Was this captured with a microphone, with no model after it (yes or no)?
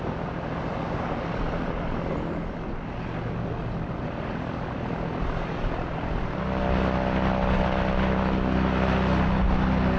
yes